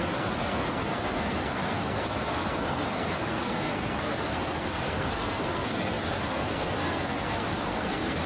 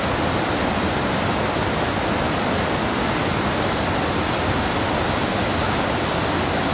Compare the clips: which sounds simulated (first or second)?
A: first